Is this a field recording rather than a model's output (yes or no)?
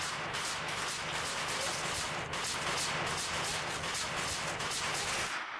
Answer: yes